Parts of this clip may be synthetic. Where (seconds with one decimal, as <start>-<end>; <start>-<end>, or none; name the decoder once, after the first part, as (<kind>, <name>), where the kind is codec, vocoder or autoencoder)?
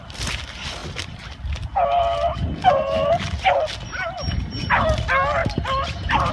5.4-6.3 (vocoder, BigVGAN v2)